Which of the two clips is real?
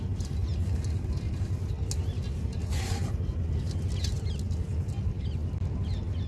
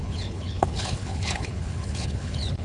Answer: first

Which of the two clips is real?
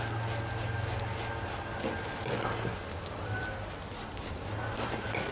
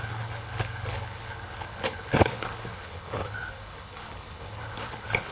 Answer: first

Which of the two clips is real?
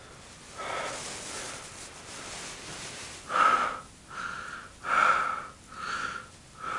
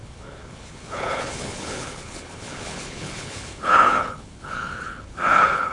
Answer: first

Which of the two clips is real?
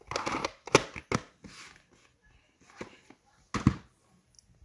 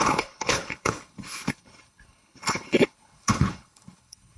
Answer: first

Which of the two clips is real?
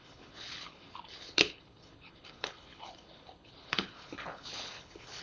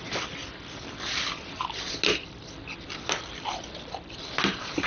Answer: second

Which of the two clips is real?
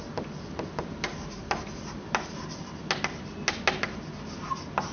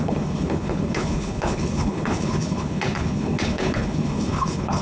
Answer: first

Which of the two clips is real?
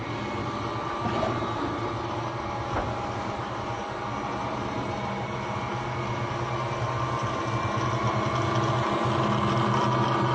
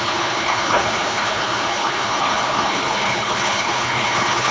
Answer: first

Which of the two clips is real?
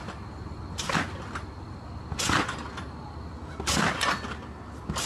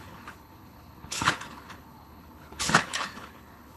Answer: first